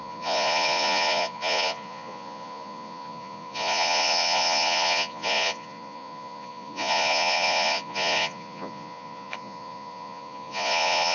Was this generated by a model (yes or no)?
yes